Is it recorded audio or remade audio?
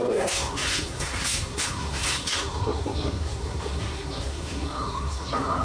remade